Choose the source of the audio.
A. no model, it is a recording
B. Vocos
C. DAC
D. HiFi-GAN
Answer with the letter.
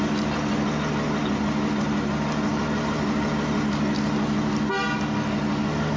A